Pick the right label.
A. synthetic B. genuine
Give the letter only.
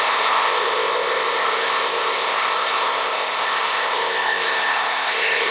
A